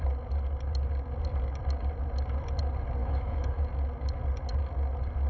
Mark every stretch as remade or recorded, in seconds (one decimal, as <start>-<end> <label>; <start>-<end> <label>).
0.0-3.0 recorded; 3.0-3.6 remade; 3.6-5.3 recorded